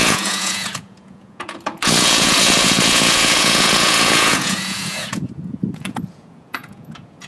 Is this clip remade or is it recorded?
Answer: remade